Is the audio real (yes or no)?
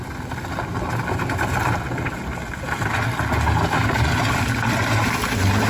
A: yes